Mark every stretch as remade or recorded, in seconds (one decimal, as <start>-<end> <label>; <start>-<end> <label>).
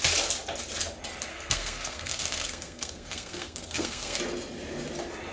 0.0-1.3 recorded; 1.3-4.2 remade; 4.2-5.3 recorded